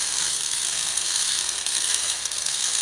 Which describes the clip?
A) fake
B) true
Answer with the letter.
A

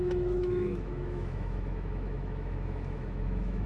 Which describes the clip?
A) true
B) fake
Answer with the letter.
B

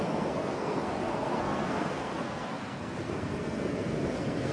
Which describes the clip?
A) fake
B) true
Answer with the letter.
A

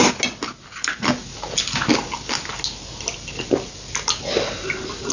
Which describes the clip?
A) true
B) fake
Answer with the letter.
A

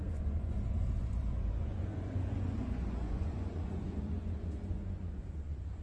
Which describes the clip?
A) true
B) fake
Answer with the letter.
B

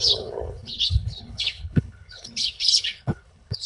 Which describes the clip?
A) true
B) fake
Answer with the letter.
B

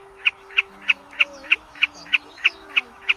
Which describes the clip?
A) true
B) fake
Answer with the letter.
B